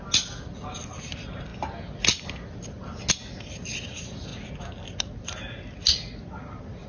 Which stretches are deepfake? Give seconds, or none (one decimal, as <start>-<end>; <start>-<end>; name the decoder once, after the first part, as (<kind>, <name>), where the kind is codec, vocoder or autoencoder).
none